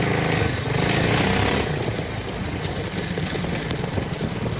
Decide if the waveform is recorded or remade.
recorded